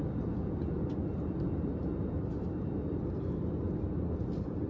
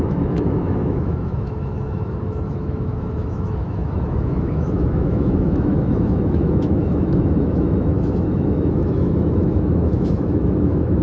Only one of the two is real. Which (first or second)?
first